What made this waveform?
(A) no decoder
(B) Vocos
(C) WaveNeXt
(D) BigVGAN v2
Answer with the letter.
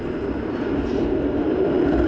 A